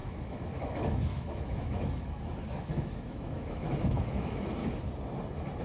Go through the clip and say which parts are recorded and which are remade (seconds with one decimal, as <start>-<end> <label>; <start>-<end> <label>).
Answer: 0.0-4.6 remade; 4.6-5.6 recorded